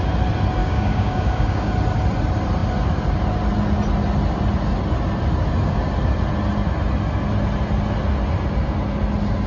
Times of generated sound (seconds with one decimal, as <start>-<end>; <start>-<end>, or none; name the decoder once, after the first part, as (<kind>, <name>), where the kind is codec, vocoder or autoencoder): 0.6-1.7 (codec, DAC)